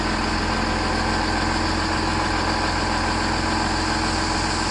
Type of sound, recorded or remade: recorded